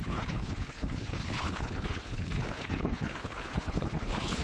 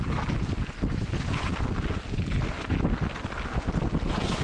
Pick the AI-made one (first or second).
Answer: first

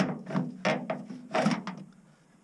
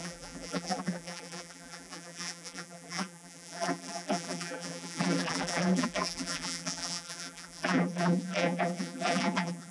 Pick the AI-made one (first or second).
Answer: second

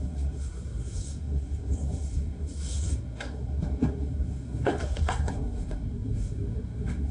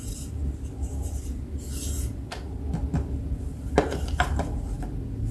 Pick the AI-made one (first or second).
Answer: first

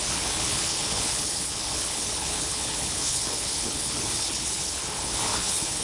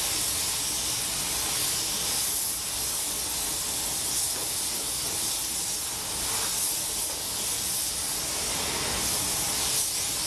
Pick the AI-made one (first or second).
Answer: first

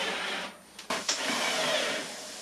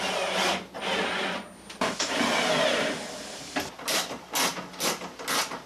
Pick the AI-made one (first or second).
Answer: first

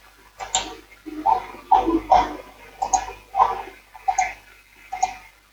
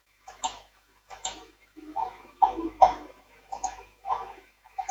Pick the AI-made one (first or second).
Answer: second